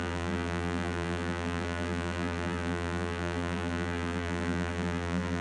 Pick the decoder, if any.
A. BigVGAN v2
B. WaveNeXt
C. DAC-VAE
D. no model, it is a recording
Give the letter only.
A